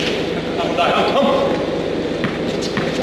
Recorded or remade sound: recorded